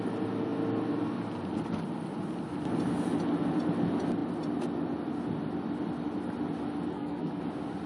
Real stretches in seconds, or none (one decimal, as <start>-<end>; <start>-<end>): 0.0-6.9; 7.4-7.9